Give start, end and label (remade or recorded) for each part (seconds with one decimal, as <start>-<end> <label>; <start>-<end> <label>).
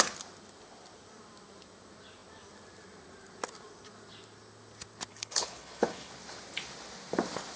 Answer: 0.0-5.1 recorded; 5.1-6.1 remade; 6.1-7.6 recorded